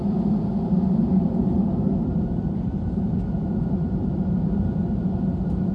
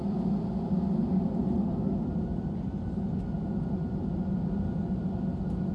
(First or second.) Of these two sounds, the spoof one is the first